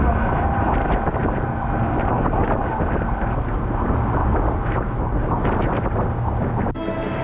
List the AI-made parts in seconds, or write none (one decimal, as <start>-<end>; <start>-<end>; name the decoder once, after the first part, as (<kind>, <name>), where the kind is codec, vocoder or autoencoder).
none